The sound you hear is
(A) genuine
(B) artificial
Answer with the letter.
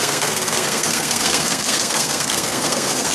B